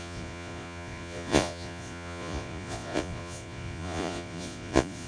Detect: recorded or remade remade